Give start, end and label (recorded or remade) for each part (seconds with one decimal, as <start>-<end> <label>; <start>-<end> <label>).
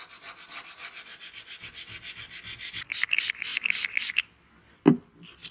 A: 0.0-5.5 recorded